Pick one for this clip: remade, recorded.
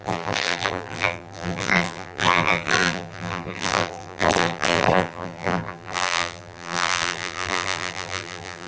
remade